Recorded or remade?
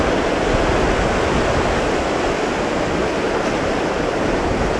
recorded